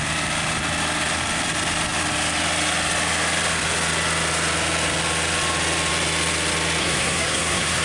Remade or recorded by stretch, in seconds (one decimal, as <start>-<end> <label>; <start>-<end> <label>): 0.0-6.8 recorded; 6.8-7.8 remade